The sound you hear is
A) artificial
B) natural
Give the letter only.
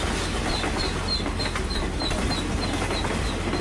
B